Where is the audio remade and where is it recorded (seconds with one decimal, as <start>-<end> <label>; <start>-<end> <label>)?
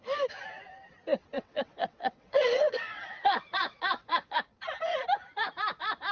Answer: 0.0-1.1 recorded; 1.1-4.6 remade; 4.6-6.1 recorded